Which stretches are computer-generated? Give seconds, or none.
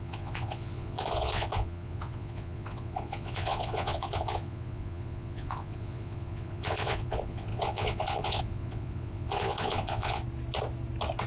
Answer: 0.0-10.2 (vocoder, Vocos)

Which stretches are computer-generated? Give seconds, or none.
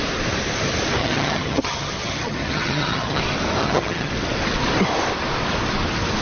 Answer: 1.0-3.2 (vocoder, HiFi-GAN); 3.6-4.1